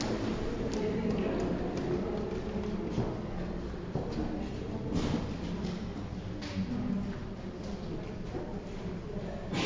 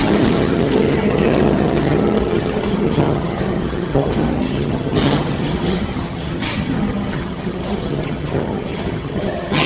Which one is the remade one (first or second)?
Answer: second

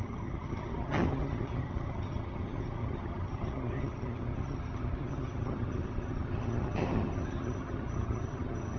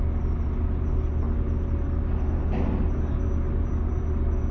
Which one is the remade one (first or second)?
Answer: first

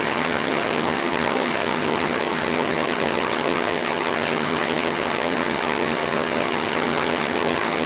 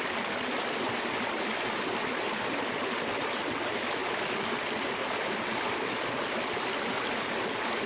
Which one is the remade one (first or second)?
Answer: first